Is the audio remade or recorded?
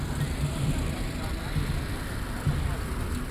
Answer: recorded